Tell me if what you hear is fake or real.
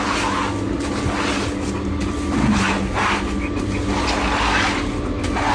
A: real